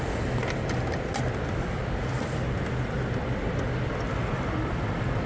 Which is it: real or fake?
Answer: real